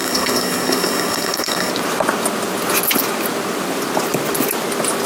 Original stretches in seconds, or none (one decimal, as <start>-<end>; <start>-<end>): 1.7-5.1